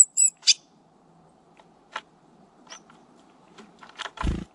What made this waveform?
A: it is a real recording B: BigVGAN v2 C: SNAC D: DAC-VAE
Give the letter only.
B